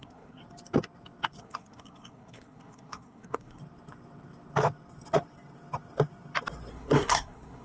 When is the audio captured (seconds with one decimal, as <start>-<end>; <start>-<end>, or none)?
0.4-1.4; 3.6-6.7